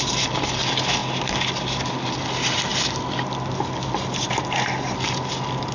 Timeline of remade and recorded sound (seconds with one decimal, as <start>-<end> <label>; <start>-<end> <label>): 0.0-1.0 recorded; 1.0-1.9 remade; 1.9-2.7 recorded; 2.7-4.9 remade; 4.9-5.7 recorded